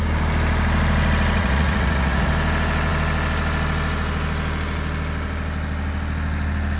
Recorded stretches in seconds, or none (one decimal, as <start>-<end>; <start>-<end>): 0.0-1.4; 2.3-6.8